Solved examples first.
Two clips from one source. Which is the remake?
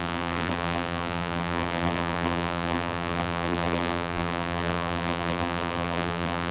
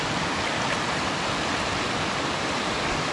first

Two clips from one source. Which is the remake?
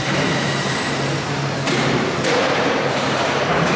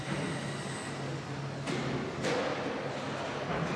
first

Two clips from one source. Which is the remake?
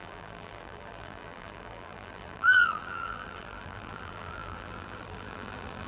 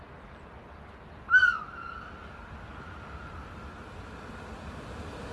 first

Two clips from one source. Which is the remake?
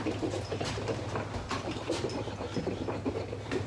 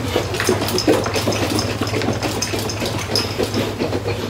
first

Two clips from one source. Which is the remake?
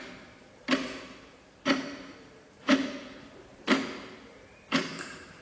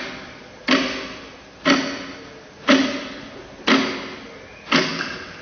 first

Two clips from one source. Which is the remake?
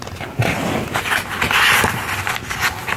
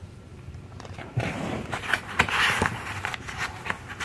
second